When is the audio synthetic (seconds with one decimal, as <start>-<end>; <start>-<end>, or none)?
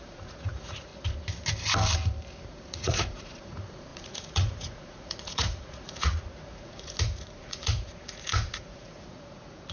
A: 0.0-0.9; 2.5-9.7